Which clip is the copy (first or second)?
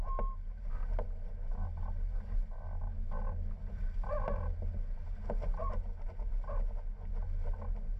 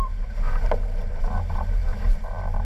second